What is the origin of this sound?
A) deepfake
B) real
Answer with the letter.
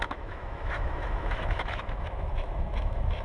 A